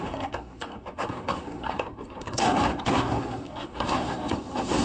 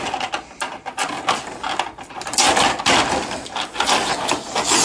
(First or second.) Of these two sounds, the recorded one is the second